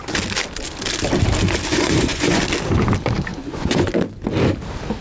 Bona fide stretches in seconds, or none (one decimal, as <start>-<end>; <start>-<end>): 0.0-1.7; 2.4-3.3; 3.9-5.0